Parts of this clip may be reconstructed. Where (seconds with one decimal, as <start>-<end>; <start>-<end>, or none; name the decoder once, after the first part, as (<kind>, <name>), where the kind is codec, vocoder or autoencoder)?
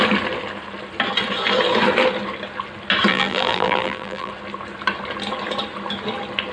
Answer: 3.1-4.3 (vocoder, BigVGAN v2)